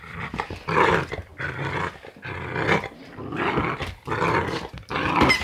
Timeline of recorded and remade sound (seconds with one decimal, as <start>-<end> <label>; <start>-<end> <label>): 0.0-5.4 recorded